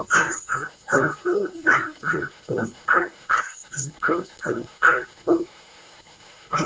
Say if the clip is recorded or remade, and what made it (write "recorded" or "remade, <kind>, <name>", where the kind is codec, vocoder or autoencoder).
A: remade, codec, SNAC